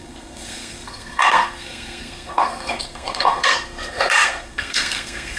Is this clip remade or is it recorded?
remade